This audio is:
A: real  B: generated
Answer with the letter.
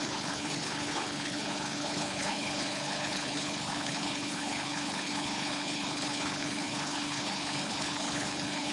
B